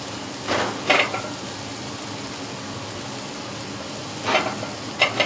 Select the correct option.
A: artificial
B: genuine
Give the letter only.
B